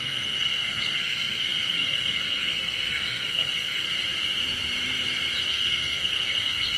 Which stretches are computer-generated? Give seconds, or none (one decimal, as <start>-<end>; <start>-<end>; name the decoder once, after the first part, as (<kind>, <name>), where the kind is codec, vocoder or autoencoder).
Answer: 0.0-3.9 (codec, SNAC); 5.5-6.8